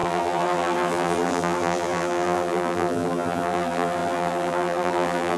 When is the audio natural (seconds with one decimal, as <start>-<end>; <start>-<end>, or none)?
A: none